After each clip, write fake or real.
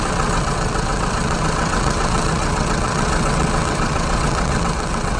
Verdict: fake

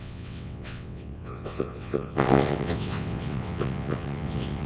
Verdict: fake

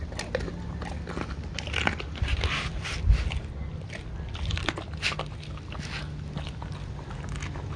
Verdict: real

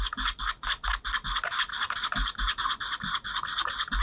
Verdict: real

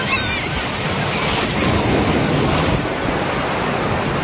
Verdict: real